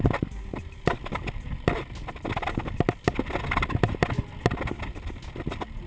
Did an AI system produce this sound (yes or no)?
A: no